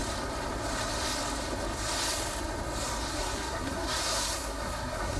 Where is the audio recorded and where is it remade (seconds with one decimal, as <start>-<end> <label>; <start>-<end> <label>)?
0.0-3.1 recorded; 3.1-5.2 remade

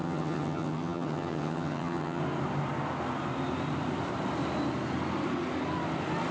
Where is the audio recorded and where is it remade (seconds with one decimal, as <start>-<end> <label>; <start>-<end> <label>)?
0.0-2.2 remade; 2.2-6.3 recorded

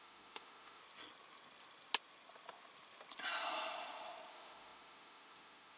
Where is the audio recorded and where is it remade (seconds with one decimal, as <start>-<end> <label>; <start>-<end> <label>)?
0.0-0.8 remade; 0.8-4.3 recorded; 4.3-5.8 remade

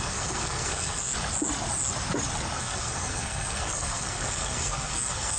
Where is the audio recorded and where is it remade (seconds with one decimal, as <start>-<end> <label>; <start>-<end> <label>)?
0.0-1.1 remade; 1.1-2.6 recorded; 2.6-5.4 remade

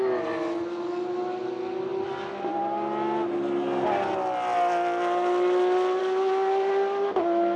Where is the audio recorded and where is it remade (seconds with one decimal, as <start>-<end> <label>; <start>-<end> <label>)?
0.0-7.6 recorded